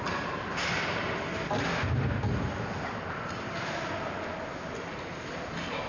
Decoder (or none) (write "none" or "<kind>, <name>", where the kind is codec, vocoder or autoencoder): none